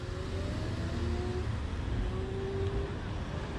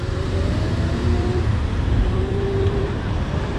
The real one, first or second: first